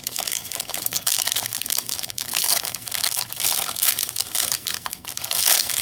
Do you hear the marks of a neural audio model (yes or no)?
yes